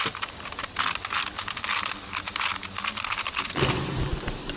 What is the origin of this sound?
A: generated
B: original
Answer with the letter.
B